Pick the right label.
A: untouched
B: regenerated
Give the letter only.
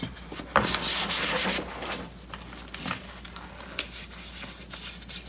A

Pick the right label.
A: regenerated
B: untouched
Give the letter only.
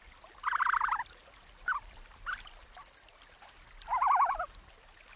B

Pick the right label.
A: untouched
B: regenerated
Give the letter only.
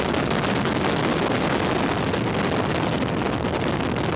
A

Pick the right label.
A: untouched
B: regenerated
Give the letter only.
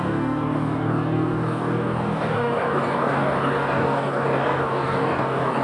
B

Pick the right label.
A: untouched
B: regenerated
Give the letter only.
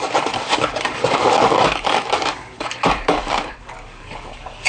B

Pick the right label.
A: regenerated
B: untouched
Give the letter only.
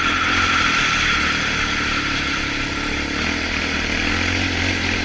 B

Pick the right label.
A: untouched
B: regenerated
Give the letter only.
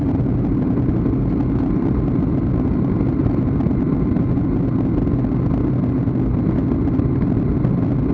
A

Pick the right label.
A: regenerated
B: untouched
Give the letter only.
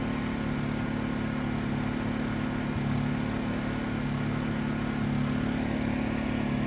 B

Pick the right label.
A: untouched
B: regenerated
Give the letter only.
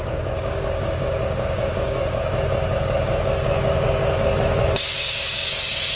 B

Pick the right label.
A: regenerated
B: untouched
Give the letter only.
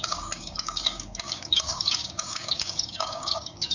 A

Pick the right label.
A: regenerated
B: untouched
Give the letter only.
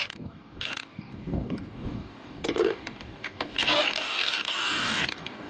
A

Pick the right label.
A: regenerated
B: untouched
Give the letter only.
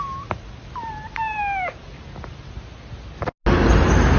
B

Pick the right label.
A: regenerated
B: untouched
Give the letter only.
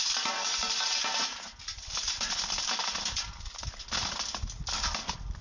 B